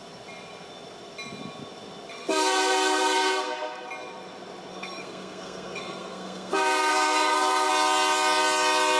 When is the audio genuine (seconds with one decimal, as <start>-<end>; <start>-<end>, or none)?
0.0-2.1; 3.9-4.7; 7.7-9.0